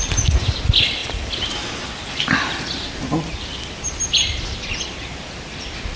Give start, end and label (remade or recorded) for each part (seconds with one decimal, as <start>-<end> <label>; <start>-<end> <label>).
0.0-6.0 recorded